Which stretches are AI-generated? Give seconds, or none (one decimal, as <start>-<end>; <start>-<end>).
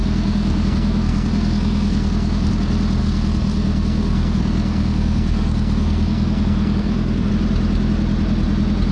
0.0-2.5; 3.0-7.3